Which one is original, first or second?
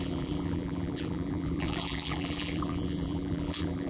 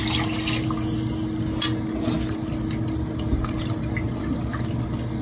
second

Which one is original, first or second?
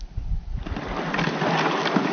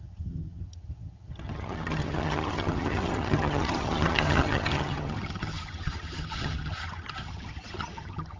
first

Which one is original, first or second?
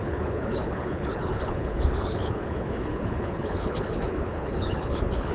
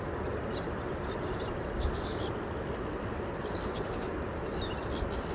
second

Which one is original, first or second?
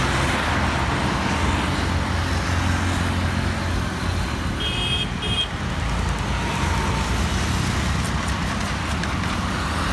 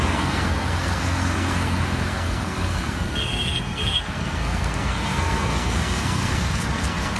first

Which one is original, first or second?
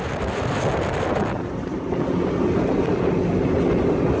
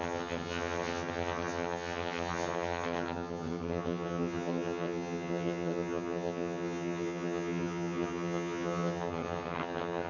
first